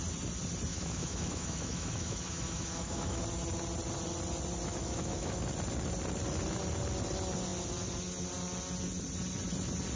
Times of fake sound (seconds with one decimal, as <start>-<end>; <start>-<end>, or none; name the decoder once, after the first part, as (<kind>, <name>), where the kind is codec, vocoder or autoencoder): 0.7-3.2 (autoencoder, DAC-VAE); 4.7-5.4